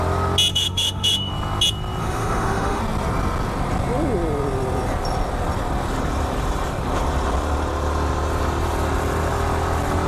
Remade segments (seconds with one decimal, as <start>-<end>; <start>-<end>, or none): 0.5-1.3; 2.0-2.8